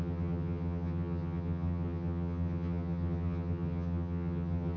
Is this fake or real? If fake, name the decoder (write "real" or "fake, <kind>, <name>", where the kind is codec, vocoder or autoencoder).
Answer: fake, vocoder, HiFi-GAN